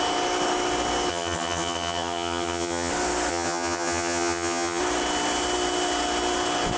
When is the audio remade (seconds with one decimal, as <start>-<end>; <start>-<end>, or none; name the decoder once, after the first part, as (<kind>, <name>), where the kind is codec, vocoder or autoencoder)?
1.1-2.9 (vocoder, HiFi-GAN); 3.3-4.8